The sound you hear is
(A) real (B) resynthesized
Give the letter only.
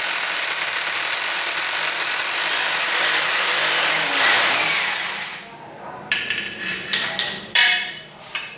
B